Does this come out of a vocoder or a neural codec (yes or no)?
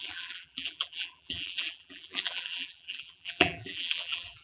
yes